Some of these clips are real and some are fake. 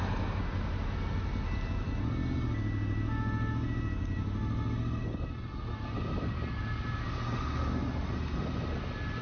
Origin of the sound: real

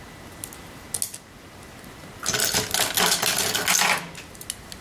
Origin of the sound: real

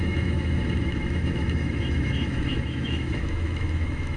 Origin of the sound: fake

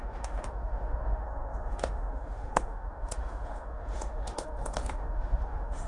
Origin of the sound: fake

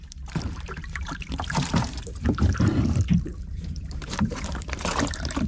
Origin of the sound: fake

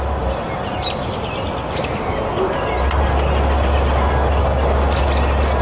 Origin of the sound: real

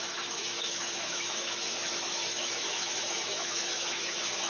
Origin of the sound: fake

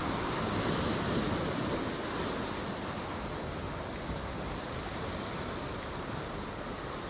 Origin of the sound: real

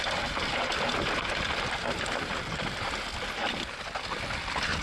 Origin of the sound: fake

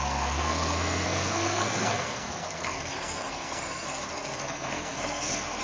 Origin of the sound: fake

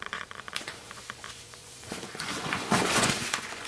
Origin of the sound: fake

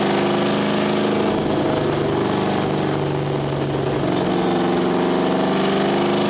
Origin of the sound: real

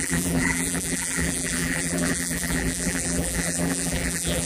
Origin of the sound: fake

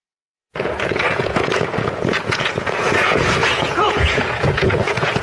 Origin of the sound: fake